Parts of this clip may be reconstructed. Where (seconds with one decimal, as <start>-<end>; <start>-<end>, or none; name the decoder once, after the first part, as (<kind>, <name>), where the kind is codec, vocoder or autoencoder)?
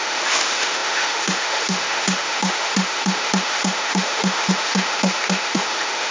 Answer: 0.0-6.1 (autoencoder, DAC-VAE)